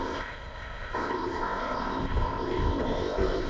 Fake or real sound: fake